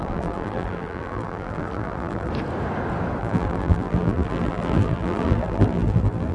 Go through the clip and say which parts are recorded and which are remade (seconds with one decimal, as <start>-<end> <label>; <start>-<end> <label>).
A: 0.0-2.3 remade; 2.3-3.2 recorded; 3.2-6.3 remade